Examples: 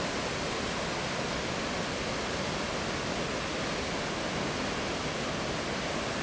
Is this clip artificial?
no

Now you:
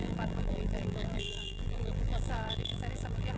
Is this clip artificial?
yes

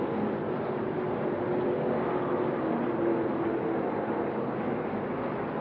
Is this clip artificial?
no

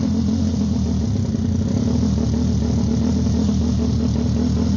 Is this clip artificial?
no